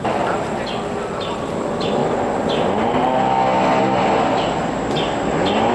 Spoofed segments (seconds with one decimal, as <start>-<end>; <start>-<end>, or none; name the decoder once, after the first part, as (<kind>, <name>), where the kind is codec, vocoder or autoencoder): none